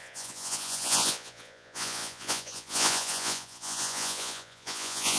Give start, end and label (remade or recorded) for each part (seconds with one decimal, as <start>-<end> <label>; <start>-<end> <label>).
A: 0.0-5.2 remade